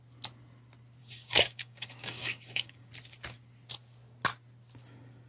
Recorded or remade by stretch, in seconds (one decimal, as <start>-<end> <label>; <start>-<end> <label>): 0.0-1.0 recorded; 1.0-2.9 remade; 2.9-5.3 recorded